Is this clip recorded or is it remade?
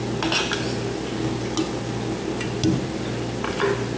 recorded